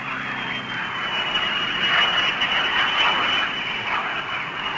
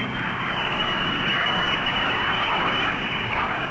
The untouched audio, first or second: first